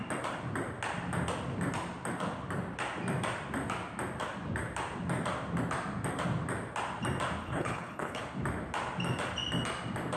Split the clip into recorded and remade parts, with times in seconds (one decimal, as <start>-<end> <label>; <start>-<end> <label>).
0.0-7.4 recorded; 7.4-8.2 remade; 8.2-10.2 recorded